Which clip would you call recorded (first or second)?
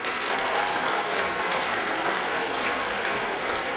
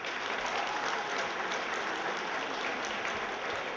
second